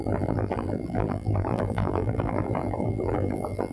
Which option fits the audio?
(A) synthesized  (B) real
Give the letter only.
A